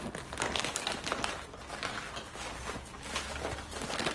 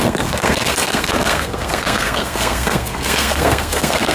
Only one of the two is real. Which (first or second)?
first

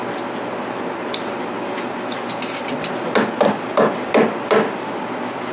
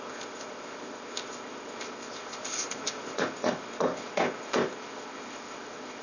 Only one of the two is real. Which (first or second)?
first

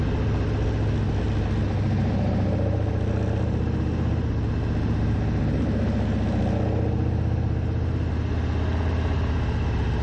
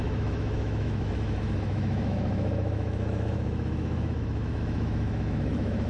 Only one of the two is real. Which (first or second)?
first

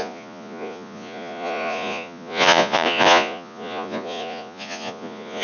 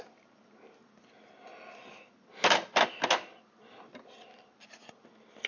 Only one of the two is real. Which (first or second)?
second